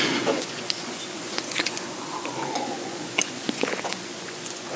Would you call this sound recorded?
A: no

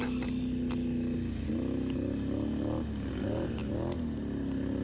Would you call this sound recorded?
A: yes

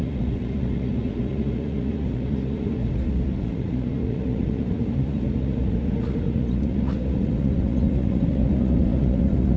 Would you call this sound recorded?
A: no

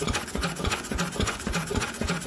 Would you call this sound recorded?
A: no